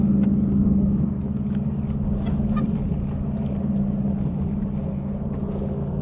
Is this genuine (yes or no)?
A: yes